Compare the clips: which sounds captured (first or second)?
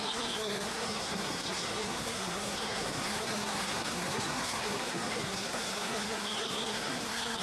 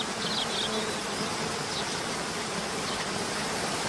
second